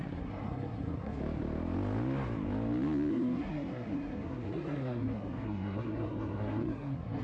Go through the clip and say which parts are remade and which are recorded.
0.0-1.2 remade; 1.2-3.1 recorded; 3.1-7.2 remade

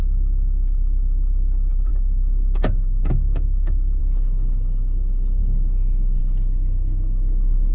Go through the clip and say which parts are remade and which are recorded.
0.0-1.9 recorded; 1.9-4.0 remade; 4.0-7.7 recorded

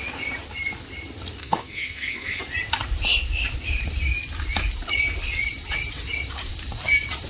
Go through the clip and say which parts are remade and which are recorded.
0.0-1.4 recorded; 1.4-2.4 remade; 2.4-7.3 recorded

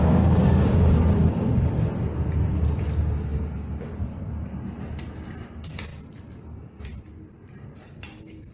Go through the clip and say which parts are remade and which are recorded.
0.0-1.7 remade; 1.7-3.3 recorded; 3.3-4.0 remade; 4.0-8.5 recorded

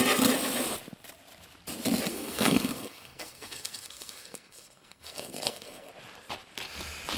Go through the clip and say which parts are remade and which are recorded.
0.0-2.1 recorded; 2.1-5.9 remade; 5.9-7.2 recorded

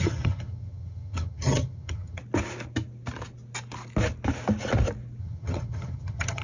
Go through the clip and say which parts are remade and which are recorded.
0.0-2.2 remade; 2.2-5.2 recorded; 5.2-6.4 remade